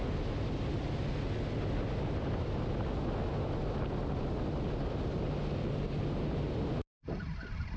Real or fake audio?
real